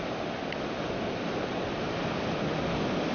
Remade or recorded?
recorded